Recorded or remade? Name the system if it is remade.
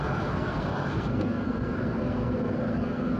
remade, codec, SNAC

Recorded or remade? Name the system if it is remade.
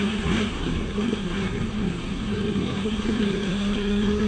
remade, codec, SNAC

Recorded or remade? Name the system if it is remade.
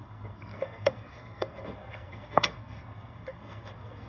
remade, codec, SNAC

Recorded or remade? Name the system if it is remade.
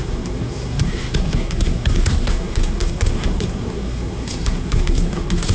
remade, codec, SNAC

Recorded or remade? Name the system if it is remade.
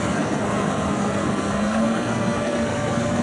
remade, codec, SNAC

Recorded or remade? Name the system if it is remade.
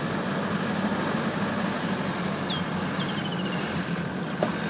recorded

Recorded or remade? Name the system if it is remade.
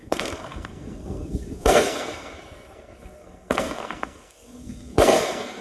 remade, codec, SNAC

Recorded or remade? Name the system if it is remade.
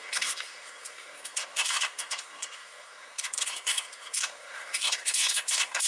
remade, codec, SNAC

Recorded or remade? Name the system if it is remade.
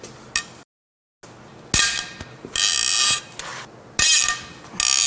recorded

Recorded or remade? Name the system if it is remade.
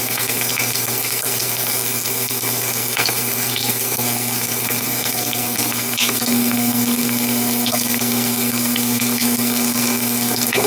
remade, codec, SNAC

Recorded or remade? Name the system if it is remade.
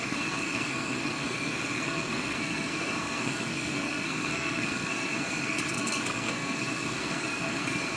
remade, codec, SNAC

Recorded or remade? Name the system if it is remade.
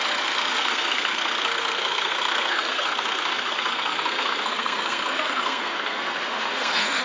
remade, codec, SNAC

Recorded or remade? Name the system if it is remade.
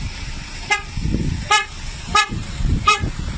recorded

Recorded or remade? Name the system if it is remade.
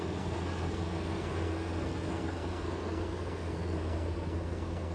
remade, codec, SNAC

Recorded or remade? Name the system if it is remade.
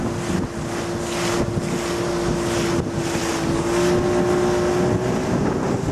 recorded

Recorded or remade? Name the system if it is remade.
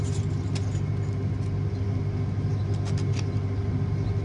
recorded